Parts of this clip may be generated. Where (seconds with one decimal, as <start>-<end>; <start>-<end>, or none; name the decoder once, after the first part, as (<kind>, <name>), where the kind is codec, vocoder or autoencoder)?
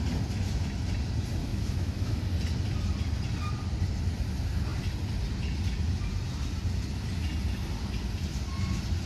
1.5-2.2 (autoencoder, DAC-VAE)